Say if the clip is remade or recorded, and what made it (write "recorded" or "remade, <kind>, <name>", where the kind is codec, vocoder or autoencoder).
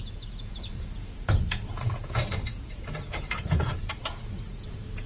remade, vocoder, Vocos